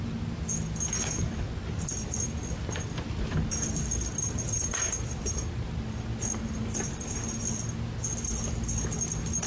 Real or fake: real